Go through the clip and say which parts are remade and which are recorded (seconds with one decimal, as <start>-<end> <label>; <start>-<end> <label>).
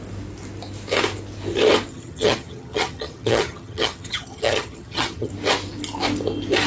0.0-1.9 recorded; 1.9-5.3 remade; 5.3-6.7 recorded